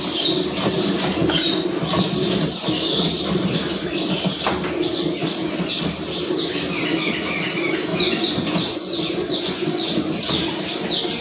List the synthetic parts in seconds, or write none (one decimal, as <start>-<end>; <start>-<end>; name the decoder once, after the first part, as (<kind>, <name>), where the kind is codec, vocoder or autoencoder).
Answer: 7.9-10.1 (vocoder, Vocos)